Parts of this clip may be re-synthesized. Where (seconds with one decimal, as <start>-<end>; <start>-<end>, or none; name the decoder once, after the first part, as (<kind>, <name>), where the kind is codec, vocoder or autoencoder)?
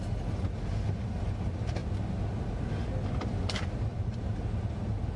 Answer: 3.9-4.4 (vocoder, BigVGAN v2)